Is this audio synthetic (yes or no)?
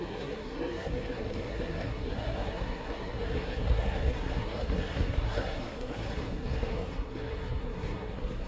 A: yes